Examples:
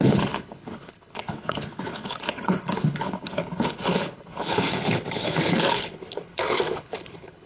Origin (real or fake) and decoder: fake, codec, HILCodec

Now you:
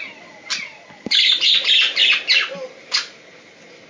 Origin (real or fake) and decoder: real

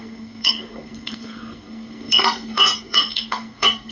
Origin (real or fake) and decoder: fake, codec, SNAC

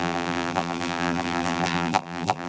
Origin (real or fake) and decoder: fake, vocoder, BigVGAN v2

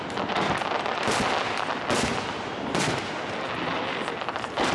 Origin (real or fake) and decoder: real